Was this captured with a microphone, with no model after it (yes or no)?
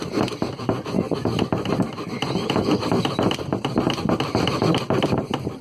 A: yes